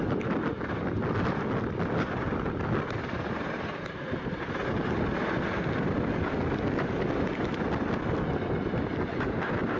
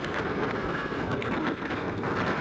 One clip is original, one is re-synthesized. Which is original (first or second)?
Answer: first